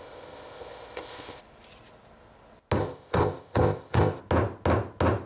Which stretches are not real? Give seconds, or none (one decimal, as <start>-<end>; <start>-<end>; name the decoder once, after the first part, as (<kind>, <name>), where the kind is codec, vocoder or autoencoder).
0.0-1.4 (codec, ZipCodec); 2.8-4.2